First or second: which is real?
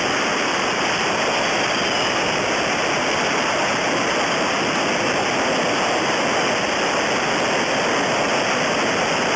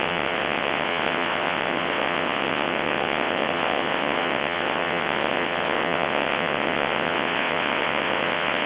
first